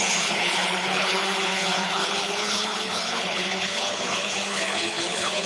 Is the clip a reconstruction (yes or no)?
yes